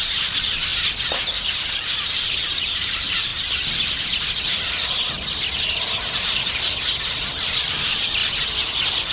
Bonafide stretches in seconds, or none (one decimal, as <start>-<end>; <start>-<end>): 0.7-1.3; 3.3-7.7